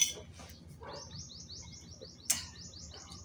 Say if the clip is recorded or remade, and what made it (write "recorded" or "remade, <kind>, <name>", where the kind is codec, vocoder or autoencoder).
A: recorded